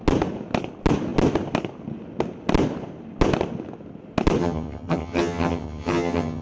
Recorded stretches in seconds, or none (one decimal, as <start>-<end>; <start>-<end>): 0.0-4.4